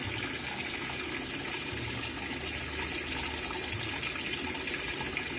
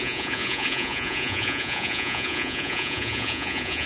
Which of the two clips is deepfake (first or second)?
second